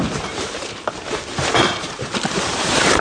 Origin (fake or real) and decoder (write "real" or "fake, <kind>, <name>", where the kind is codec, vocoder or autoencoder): fake, vocoder, BigVGAN v2